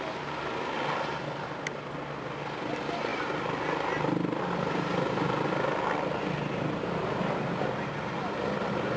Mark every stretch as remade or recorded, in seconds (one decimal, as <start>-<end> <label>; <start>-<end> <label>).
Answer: 0.0-9.0 recorded